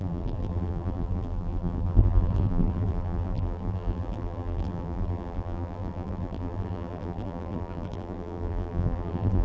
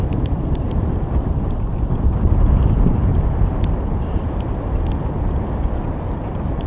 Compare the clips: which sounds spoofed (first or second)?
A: first